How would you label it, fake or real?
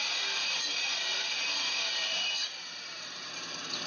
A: fake